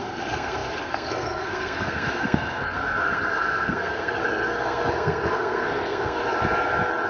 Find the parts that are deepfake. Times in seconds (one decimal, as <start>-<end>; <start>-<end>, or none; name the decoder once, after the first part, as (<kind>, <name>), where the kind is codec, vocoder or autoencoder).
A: 0.0-6.2 (codec, SNAC)